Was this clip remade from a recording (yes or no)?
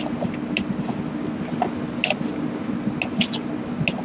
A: no